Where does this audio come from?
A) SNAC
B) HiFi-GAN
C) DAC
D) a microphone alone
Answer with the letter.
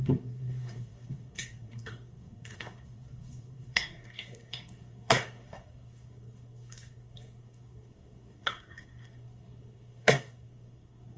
A